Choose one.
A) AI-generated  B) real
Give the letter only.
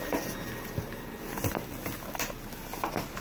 A